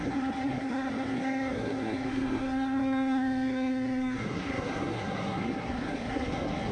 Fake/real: fake